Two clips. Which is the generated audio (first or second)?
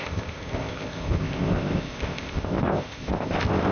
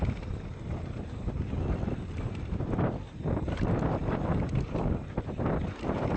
first